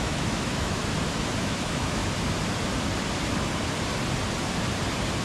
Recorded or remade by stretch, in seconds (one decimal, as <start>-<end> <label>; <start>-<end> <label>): 0.0-0.8 remade; 0.8-1.4 recorded; 1.4-2.0 remade; 2.0-5.2 recorded